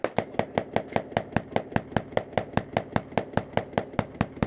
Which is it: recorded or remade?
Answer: recorded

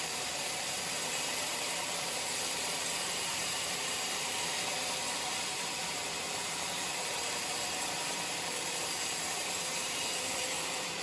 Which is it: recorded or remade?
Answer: remade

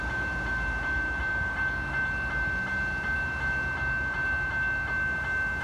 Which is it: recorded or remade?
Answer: recorded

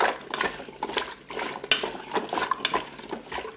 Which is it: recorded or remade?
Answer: recorded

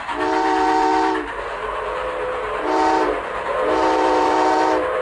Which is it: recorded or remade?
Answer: remade